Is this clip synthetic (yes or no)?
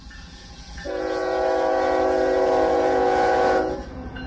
yes